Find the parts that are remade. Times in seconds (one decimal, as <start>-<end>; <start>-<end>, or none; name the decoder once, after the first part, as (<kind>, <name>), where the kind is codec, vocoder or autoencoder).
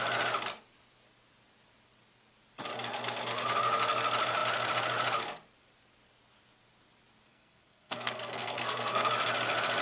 7.3-9.1 (codec, SNAC)